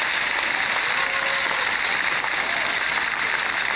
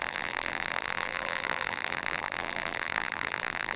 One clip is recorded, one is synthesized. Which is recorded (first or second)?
first